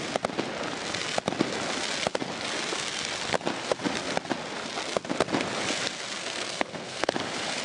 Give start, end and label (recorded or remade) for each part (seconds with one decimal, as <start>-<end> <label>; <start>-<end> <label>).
0.0-6.2 recorded; 6.2-7.1 remade; 7.1-7.6 recorded